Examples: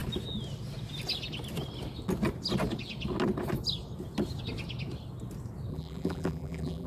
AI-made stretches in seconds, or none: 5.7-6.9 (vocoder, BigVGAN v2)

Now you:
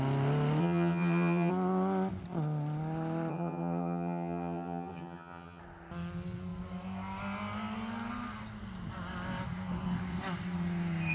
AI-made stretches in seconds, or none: 0.6-1.5 (vocoder, HiFi-GAN); 3.3-5.6

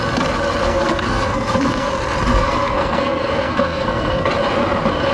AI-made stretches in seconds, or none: 0.6-1.9 (codec, SNAC); 2.3-4.3

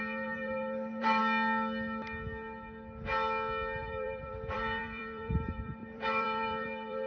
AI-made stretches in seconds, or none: 0.0-1.2 (vocoder, BigVGAN v2); 3.8-7.1

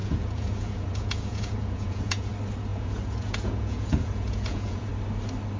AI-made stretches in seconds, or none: 0.0-2.3 (vocoder, Vocos); 2.7-4.9

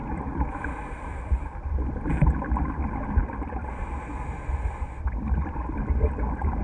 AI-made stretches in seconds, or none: 0.0-2.1 (vocoder, BigVGAN v2); 3.2-3.7

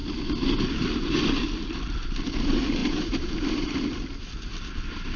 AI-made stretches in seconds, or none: 2.8-3.8 (vocoder, BigVGAN v2)

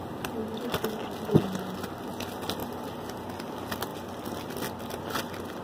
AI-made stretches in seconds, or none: none